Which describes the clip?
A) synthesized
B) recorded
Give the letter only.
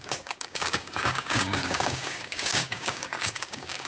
A